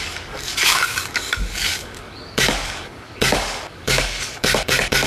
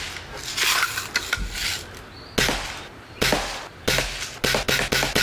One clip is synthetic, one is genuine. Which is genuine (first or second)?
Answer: second